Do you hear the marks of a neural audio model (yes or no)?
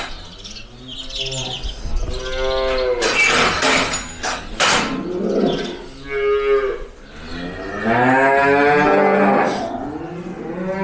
no